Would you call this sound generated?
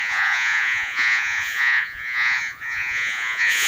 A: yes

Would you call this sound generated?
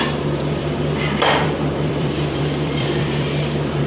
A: yes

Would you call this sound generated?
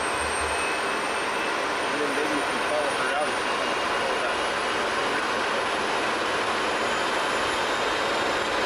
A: no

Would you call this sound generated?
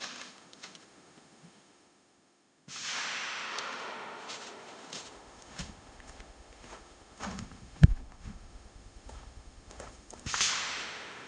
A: yes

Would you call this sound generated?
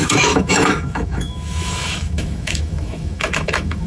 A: yes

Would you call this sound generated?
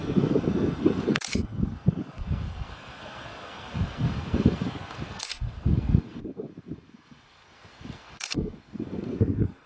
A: yes